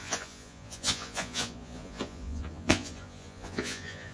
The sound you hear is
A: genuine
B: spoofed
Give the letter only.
B